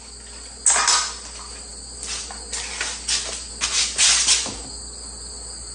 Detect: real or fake real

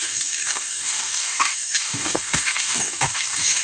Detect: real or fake fake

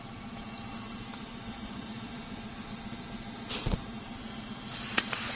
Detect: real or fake fake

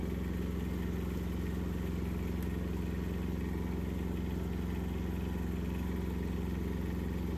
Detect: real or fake real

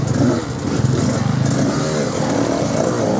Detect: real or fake real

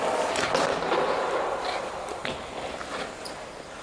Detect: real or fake real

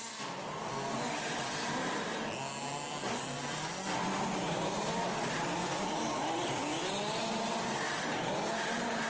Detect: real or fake real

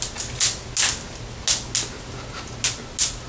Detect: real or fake real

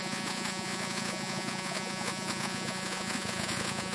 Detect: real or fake fake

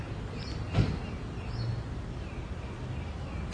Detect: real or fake real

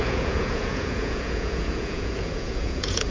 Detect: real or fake fake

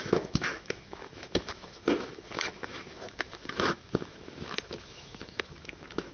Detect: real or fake fake